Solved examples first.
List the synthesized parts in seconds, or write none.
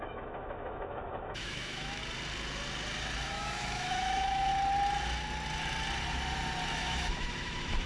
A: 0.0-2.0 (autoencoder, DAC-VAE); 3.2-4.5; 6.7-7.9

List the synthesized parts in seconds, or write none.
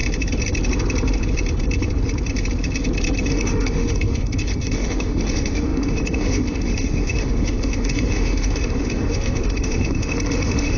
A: 3.3-10.8 (autoencoder, DAC-VAE)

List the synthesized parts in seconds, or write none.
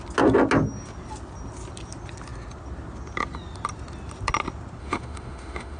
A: 4.8-5.8 (autoencoder, DAC-VAE)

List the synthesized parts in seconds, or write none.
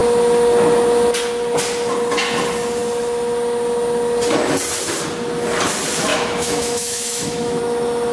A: 6.1-7.6 (autoencoder, DAC-VAE)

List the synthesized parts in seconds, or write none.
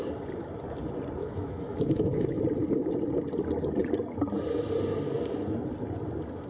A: 1.2-2.4 (autoencoder, DAC-VAE)